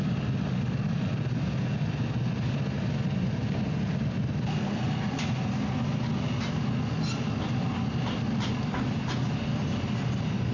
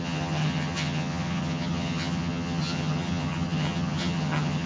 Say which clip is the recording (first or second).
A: first